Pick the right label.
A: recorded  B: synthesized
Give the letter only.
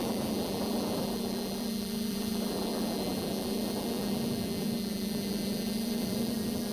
B